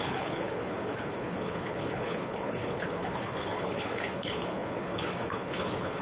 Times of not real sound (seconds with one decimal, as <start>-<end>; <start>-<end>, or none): 0.0-6.0